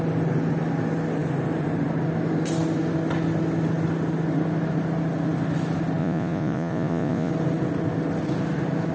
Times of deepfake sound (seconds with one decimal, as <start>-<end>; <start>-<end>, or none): 6.0-7.3